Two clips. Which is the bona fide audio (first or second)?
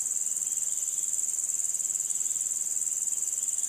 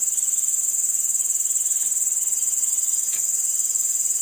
first